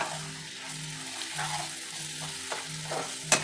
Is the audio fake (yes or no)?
no